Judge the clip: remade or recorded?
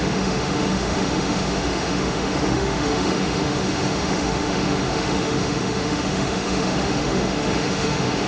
remade